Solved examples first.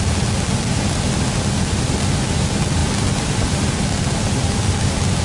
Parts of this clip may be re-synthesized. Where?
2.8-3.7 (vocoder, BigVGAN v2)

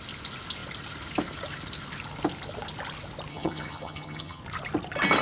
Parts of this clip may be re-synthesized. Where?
3.3-4.4 (vocoder, HiFi-GAN)

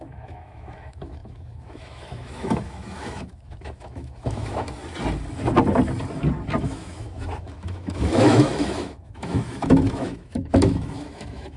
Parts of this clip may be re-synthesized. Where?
0.0-4.8 (autoencoder, DAC-VAE); 6.6-11.6

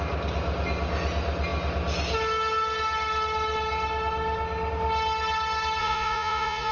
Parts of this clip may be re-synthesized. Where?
5.8-6.7 (vocoder, Vocos)

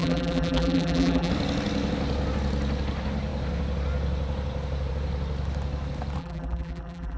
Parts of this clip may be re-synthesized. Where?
0.0-1.3 (vocoder, BigVGAN v2); 6.2-7.2